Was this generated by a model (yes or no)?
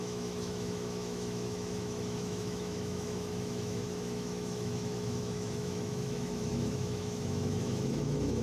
yes